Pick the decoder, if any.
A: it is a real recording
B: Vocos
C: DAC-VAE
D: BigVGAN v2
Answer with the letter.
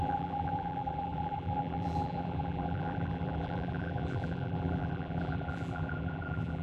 D